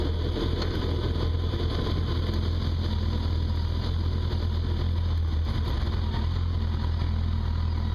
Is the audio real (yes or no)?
yes